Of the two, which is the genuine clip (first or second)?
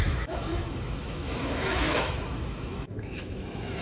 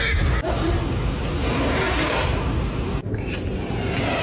second